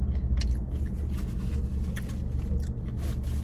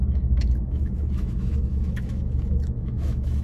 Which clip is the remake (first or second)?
second